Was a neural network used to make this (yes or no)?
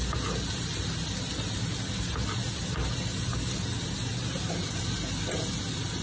no